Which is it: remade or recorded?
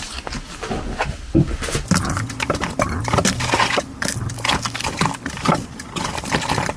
recorded